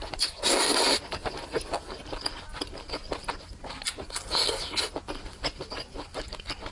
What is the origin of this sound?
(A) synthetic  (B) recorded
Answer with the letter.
B